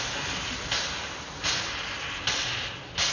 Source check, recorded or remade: recorded